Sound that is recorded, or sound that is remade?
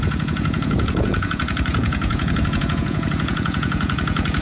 remade